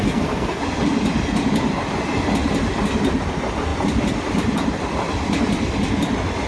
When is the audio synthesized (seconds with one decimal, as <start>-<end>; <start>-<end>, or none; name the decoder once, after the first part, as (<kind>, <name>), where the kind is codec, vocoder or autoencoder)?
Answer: 0.0-0.6 (codec, SNAC)